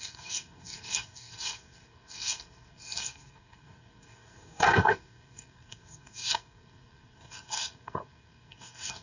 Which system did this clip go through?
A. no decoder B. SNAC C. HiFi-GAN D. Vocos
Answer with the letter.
B